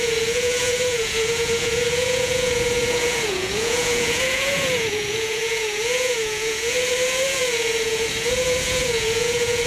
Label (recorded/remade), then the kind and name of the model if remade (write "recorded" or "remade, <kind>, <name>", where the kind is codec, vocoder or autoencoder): remade, vocoder, Vocos